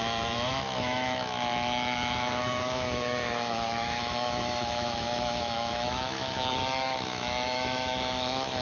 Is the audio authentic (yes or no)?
no